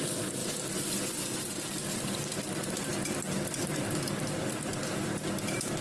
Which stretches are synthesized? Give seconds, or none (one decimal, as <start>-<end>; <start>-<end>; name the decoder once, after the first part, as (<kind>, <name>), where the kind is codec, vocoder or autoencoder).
none